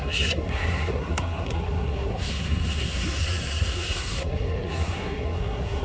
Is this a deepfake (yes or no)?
yes